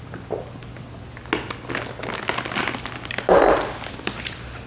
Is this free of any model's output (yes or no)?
yes